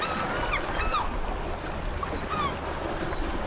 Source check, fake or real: real